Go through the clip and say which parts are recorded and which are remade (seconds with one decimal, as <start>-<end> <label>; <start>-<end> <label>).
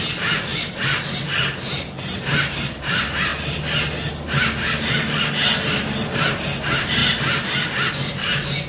0.0-8.7 recorded